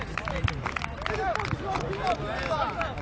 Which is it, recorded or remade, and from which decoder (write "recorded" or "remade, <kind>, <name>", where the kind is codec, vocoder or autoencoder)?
recorded